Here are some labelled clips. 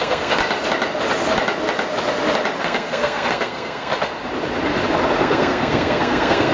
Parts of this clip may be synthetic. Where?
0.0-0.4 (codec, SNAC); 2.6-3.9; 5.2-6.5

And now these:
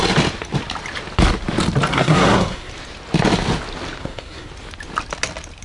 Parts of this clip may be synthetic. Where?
1.9-2.7 (codec, SNAC); 4.0-4.5

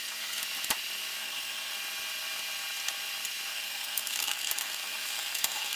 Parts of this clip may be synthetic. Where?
0.0-0.4 (codec, SNAC); 1.2-1.7; 3.5-5.8

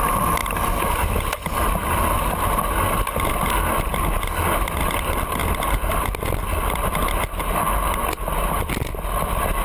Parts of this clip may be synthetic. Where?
none

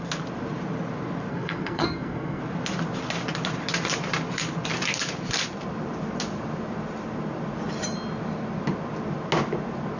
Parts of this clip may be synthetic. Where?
1.3-2.4 (codec, SNAC)

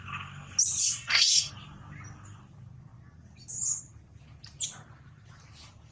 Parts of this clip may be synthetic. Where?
0.8-1.5 (codec, SNAC)

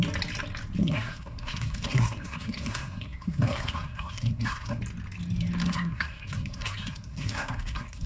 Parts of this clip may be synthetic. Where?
0.8-4.8 (codec, SNAC); 5.6-8.1

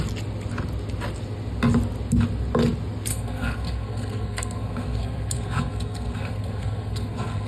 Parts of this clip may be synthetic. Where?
3.1-7.5 (codec, SNAC)